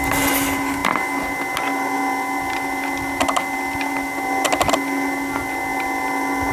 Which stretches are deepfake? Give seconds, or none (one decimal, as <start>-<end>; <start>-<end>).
none